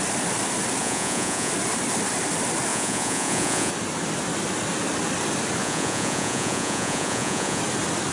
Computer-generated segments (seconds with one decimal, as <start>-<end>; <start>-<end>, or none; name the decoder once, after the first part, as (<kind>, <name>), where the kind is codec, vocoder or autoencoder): 0.8-1.5 (vocoder, Vocos); 2.7-3.7; 5.6-7.6